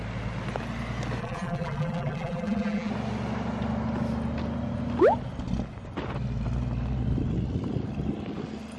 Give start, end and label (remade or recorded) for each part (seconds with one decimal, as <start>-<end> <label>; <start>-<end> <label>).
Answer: 0.0-1.2 recorded; 1.2-2.9 remade; 2.9-8.8 recorded